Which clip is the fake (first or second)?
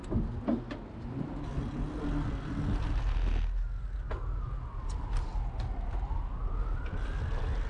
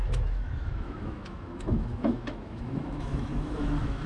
second